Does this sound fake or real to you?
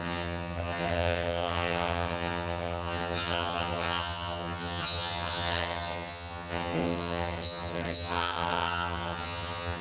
fake